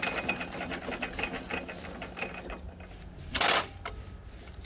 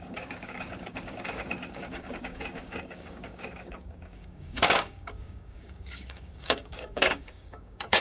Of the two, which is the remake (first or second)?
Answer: second